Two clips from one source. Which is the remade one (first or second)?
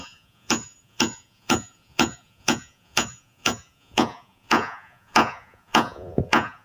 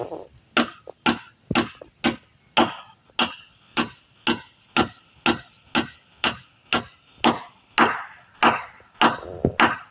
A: first